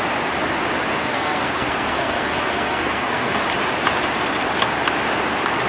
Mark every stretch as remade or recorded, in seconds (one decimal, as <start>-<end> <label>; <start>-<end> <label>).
0.0-0.9 recorded; 0.9-3.4 remade; 3.4-5.7 recorded